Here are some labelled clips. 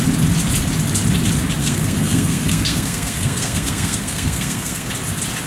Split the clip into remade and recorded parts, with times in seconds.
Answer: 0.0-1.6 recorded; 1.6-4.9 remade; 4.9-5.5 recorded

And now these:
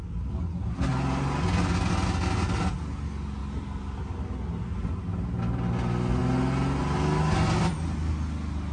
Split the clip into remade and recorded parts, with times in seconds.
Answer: 0.0-8.7 recorded

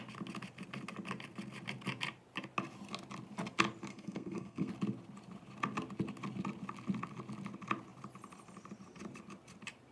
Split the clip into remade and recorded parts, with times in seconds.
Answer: 0.0-3.9 recorded; 3.9-4.7 remade; 4.7-9.9 recorded